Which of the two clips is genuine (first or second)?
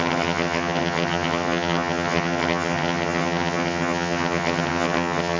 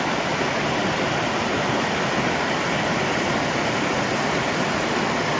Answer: second